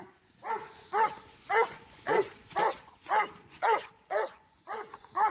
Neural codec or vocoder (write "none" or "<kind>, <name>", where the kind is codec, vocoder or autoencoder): vocoder, Vocos